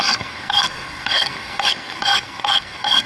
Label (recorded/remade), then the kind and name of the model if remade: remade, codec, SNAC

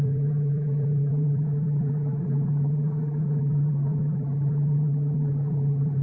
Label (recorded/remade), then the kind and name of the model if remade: remade, vocoder, BigVGAN v2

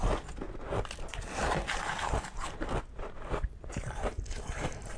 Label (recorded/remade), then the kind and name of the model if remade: recorded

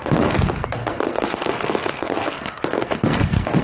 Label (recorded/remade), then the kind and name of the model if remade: remade, codec, SNAC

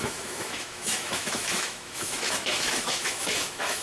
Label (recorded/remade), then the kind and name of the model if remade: remade, autoencoder, DAC-VAE